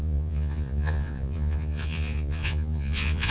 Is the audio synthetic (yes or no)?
yes